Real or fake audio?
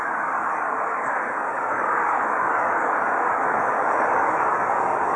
fake